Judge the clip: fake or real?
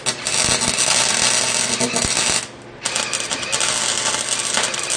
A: real